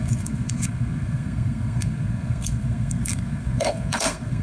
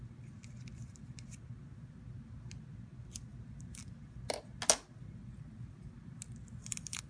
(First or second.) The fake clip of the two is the first